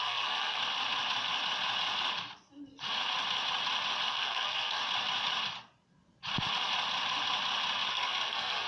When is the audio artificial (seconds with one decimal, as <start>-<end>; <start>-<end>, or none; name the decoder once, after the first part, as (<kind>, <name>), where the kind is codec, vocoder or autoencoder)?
0.0-0.6 (codec, SNAC); 4.1-4.8; 7.9-8.7